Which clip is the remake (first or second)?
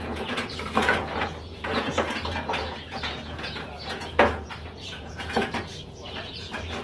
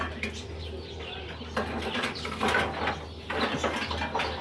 first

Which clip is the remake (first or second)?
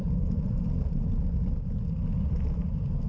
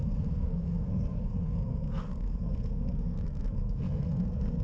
second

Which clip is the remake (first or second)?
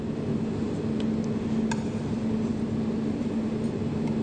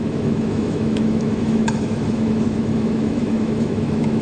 second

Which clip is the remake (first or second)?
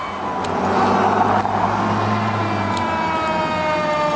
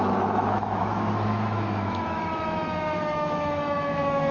second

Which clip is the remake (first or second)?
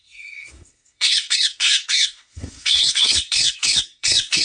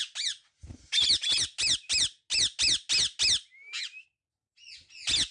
first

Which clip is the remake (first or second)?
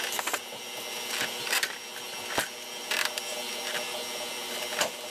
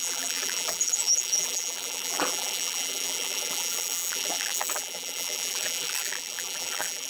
second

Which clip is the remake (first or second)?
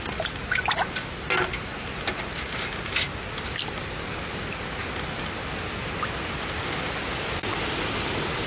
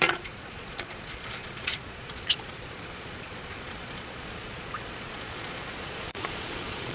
second